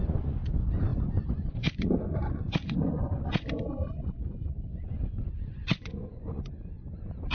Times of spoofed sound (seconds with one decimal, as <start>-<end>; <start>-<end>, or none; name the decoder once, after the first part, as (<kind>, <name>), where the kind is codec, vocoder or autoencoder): 0.0-7.3 (vocoder, Vocos)